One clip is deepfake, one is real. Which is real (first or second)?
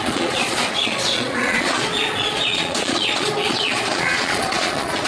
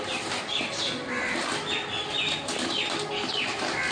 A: second